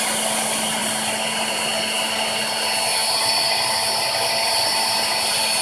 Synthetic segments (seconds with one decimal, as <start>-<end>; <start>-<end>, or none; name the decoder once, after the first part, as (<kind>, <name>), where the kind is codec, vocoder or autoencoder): none